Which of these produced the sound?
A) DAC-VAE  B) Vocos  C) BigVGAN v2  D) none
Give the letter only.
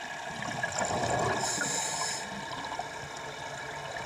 D